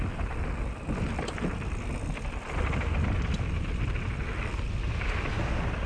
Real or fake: real